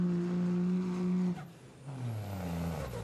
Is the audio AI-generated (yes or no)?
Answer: no